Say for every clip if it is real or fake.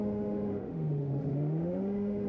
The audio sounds fake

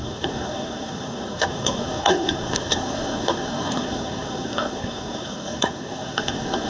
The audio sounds fake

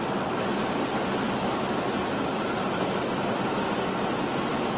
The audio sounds real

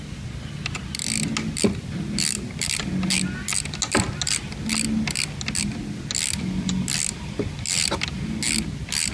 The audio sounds real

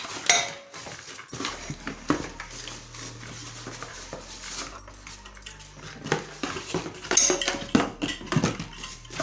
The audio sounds real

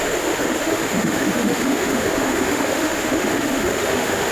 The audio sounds fake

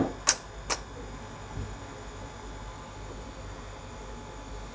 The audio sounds real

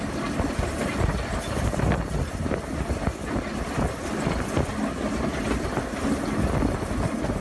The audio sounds real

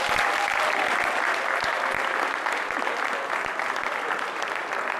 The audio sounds real